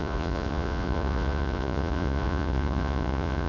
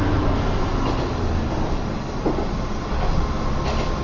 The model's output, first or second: first